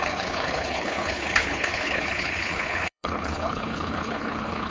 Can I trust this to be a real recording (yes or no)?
no